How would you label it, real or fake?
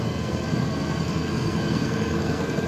fake